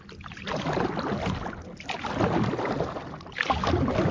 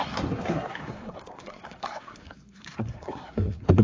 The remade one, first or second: second